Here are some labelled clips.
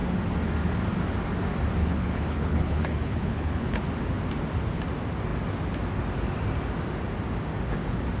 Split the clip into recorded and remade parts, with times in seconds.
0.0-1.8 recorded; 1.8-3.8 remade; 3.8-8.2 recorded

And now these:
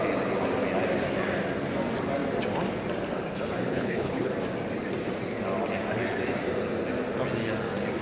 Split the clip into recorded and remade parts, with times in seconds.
0.0-3.7 recorded; 3.7-4.3 remade; 4.3-8.0 recorded

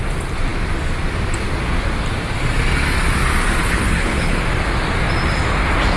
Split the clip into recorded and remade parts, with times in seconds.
0.0-3.6 recorded; 3.6-4.4 remade; 4.4-6.0 recorded

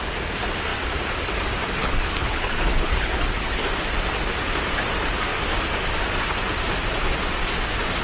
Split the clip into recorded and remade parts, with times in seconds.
0.0-1.8 recorded; 1.8-3.6 remade; 3.6-8.0 recorded

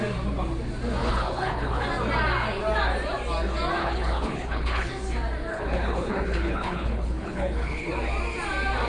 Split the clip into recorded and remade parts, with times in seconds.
0.0-1.0 recorded; 1.0-1.8 remade; 1.8-3.8 recorded; 3.8-4.9 remade; 4.9-5.5 recorded; 5.5-7.9 remade; 7.9-8.9 recorded

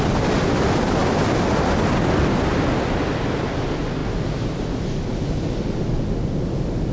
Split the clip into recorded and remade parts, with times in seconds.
0.0-6.9 recorded

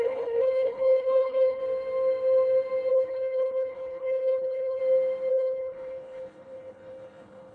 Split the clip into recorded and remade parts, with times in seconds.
0.0-1.6 remade; 1.6-2.9 recorded; 2.9-4.8 remade; 4.8-5.3 recorded; 5.3-7.5 remade

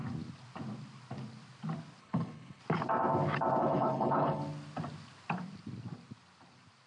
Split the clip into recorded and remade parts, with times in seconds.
0.0-2.0 recorded; 2.0-2.6 remade; 2.6-3.6 recorded; 3.6-4.4 remade; 4.4-6.9 recorded